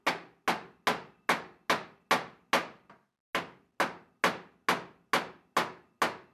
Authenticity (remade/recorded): recorded